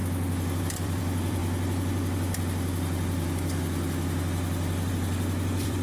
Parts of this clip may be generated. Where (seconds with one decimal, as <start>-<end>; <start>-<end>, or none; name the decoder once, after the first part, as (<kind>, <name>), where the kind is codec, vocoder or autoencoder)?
0.6-1.4 (vocoder, BigVGAN v2); 4.9-5.8